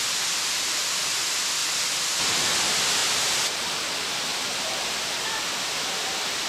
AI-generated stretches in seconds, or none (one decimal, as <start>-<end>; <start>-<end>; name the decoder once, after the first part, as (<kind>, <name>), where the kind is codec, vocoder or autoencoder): 3.0-3.9 (vocoder, BigVGAN v2); 4.3-5.0